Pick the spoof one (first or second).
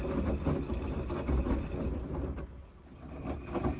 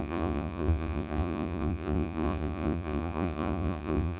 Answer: second